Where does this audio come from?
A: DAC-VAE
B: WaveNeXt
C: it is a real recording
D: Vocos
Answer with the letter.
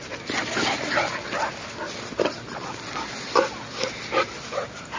C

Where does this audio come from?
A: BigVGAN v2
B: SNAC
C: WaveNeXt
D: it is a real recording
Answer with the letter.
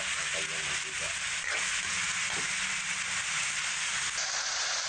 D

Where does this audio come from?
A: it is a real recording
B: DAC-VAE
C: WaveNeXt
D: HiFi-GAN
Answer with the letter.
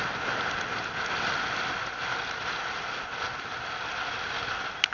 A